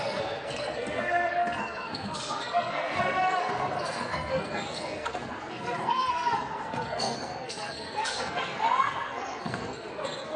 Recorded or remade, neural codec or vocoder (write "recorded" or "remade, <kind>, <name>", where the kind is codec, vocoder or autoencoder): remade, codec, SNAC